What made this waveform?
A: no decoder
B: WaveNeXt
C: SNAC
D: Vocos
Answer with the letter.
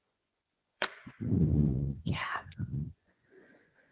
D